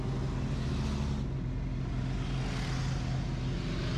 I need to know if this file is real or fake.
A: real